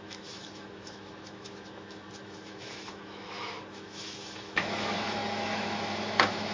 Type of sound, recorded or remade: remade